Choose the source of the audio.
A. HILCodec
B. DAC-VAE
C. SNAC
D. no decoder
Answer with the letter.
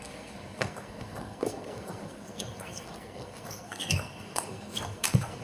C